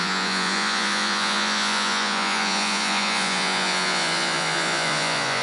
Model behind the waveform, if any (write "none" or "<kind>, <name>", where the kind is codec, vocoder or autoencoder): vocoder, Vocos